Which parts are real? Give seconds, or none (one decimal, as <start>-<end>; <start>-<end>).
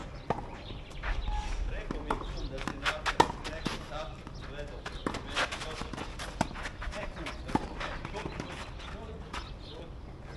0.0-10.4